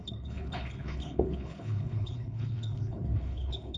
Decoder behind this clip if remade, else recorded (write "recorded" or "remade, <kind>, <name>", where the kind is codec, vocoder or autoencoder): remade, codec, HILCodec